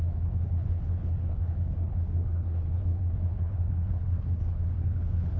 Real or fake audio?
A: fake